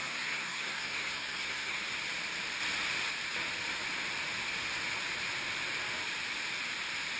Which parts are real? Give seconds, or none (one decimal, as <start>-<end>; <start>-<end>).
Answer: 1.8-7.2